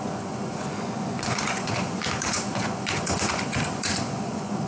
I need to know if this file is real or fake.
fake